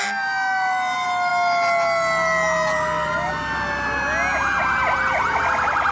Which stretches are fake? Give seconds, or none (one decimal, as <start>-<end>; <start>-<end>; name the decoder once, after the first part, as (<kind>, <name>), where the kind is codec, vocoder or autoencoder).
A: none